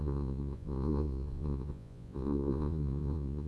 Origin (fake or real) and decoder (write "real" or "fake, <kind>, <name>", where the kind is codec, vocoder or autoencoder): fake, vocoder, Vocos